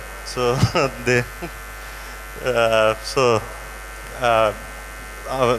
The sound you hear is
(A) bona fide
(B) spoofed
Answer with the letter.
A